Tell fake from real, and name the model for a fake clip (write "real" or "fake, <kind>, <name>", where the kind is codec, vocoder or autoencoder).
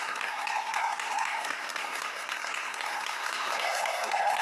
fake, codec, SNAC